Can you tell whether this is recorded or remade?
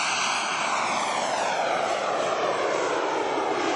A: recorded